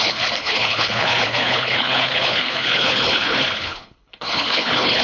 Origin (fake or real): fake